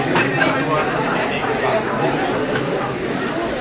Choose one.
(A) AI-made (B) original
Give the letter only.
B